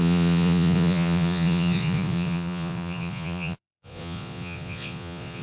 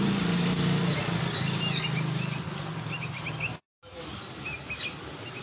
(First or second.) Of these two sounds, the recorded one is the second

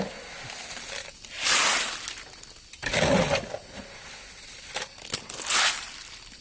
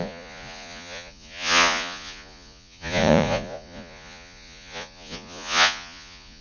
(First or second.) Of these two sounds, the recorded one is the first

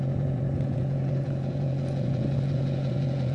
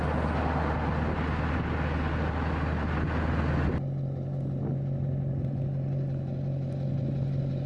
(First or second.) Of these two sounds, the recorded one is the second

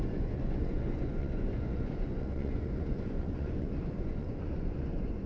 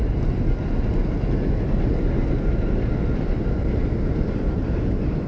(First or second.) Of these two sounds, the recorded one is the second